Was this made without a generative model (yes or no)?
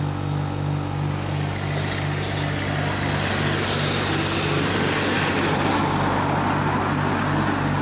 yes